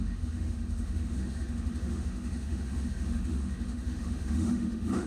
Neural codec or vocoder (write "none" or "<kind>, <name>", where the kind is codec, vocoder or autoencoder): autoencoder, DAC-VAE